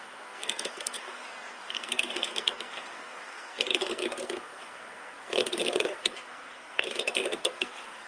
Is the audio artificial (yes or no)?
yes